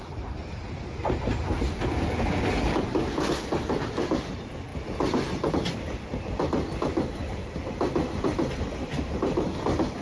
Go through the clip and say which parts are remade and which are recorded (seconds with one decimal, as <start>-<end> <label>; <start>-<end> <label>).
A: 0.0-2.3 remade; 2.3-10.0 recorded